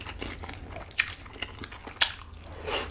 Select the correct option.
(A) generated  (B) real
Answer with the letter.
B